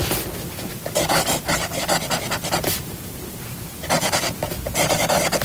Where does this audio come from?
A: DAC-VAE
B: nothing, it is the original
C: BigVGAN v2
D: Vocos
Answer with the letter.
C